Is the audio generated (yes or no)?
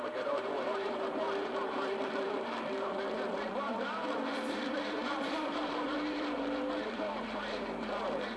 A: yes